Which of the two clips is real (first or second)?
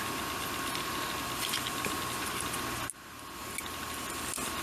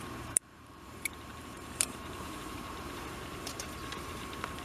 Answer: first